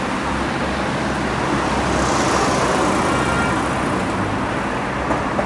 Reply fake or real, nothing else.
real